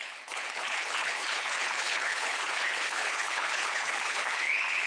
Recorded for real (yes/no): no